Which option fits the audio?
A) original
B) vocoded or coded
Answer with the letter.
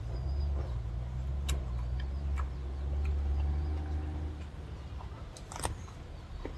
A